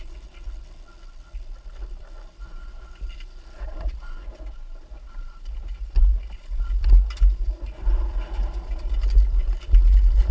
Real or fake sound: real